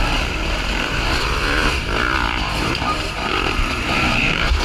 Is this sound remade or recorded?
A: remade